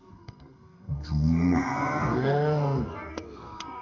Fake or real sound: fake